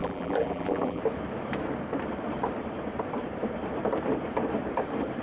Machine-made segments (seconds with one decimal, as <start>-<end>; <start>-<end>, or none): 0.0-1.0